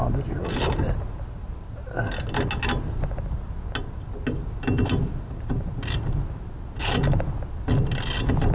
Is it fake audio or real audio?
real